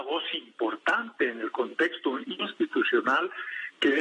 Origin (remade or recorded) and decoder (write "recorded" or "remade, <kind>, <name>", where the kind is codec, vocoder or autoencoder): recorded